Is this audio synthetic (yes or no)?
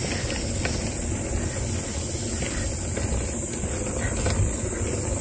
no